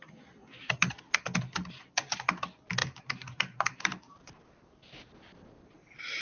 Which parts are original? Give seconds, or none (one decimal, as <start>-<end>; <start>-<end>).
0.0-0.4; 1.0-2.8; 4.4-6.2